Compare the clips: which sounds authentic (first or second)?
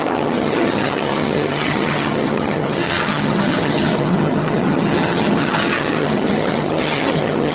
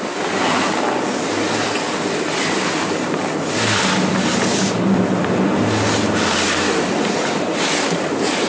second